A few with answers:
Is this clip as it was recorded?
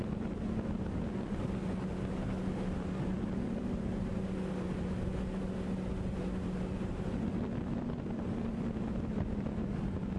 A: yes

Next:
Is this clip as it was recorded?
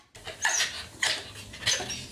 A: yes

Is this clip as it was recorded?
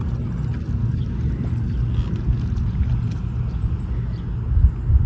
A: yes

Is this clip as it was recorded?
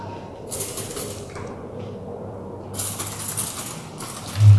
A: yes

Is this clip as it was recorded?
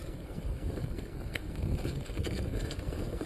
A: no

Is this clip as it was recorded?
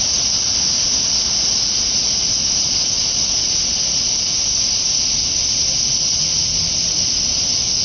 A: yes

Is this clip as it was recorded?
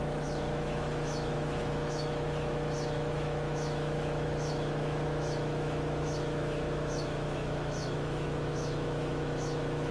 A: no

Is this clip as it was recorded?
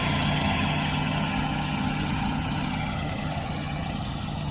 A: no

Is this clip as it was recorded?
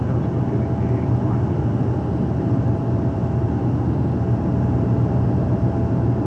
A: yes